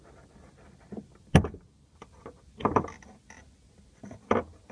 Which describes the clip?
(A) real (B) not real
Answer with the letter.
A